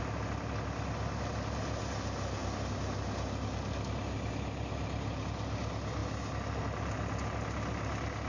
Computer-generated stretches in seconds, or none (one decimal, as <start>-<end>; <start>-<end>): none